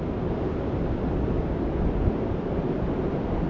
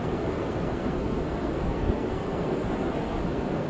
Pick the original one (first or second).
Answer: first